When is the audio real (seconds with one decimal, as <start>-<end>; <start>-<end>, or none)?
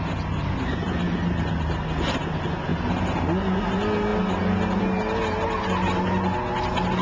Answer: 0.0-7.0